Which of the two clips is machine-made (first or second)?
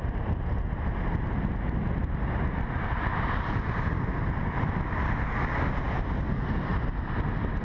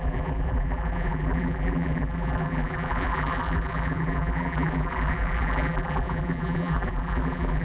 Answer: second